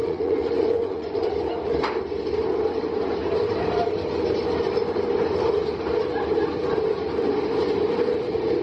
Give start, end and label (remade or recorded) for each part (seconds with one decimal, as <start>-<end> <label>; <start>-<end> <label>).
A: 0.0-1.3 remade; 1.3-8.6 recorded